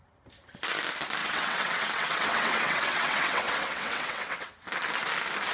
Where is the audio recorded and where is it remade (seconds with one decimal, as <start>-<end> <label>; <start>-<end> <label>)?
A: 0.0-1.2 recorded; 1.2-4.5 remade; 4.5-5.5 recorded